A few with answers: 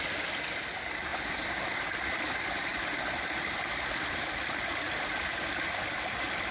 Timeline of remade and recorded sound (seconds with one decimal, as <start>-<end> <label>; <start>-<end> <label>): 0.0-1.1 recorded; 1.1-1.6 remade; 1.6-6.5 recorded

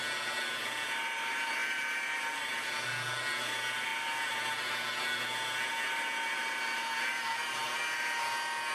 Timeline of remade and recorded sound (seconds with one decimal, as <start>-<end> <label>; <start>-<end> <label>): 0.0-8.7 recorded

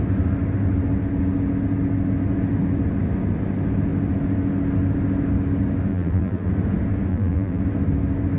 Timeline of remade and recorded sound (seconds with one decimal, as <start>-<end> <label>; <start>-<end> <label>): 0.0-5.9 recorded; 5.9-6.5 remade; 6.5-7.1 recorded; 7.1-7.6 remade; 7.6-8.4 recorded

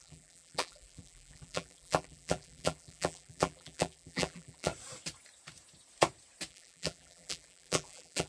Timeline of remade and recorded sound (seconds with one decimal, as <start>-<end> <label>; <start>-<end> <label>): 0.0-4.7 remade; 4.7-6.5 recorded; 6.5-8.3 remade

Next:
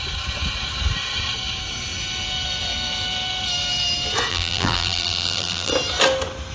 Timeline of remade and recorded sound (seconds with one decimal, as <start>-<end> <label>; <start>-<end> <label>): 0.0-4.3 recorded; 4.3-5.7 remade; 5.7-6.5 recorded

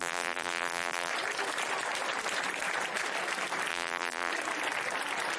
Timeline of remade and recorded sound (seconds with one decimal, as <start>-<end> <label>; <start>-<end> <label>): 0.0-1.1 remade; 1.1-3.7 recorded; 3.7-4.3 remade; 4.3-5.4 recorded

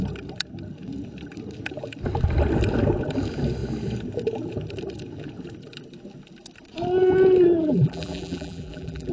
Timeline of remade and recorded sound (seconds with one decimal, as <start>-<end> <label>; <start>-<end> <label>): 0.0-7.6 recorded; 7.6-9.1 remade

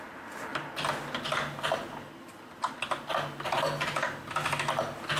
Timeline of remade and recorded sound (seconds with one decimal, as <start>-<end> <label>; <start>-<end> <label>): 0.0-5.2 recorded